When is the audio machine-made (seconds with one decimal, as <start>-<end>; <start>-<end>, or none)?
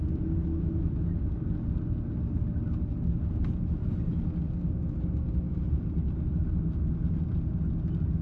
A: 0.4-1.5